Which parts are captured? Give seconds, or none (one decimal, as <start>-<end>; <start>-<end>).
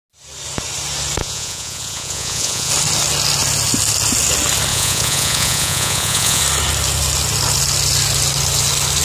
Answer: 0.0-1.2; 2.7-4.7; 6.4-9.0